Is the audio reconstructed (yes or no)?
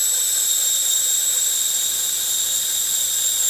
no